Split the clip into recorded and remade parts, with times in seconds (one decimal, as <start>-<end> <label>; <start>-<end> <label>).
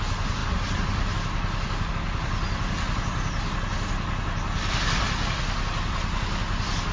0.0-6.9 recorded